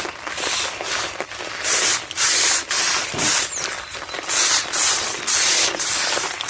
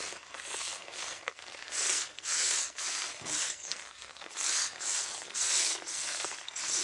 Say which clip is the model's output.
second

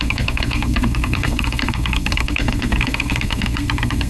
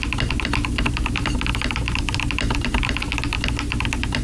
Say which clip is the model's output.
first